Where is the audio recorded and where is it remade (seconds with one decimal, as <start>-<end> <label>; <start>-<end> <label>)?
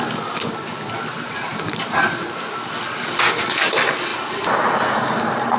0.0-1.5 recorded; 1.5-2.6 remade; 2.6-4.1 recorded; 4.1-5.6 remade